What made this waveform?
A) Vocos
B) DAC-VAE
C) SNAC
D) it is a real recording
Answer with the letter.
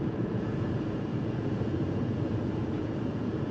A